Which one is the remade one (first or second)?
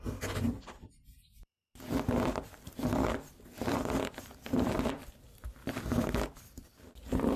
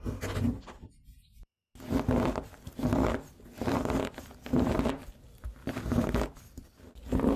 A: first